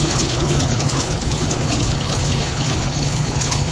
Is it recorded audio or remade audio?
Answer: remade